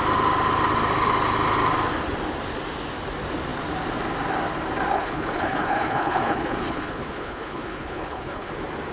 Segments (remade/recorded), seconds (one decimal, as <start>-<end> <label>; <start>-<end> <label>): 0.0-4.9 recorded; 4.9-8.5 remade; 8.5-8.9 recorded